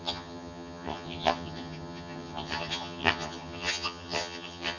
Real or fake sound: fake